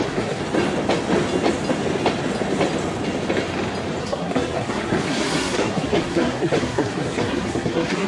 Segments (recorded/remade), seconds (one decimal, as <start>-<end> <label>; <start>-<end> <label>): 0.0-0.4 remade; 0.4-4.0 recorded; 4.0-8.1 remade